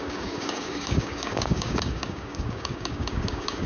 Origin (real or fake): fake